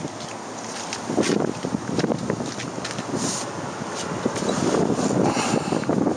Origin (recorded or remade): recorded